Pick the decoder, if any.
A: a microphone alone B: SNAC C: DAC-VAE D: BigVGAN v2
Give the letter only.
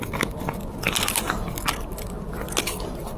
A